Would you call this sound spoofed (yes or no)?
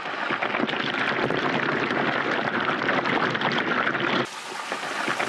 no